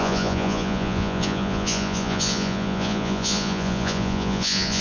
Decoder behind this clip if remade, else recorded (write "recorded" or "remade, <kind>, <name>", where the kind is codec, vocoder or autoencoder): remade, vocoder, Vocos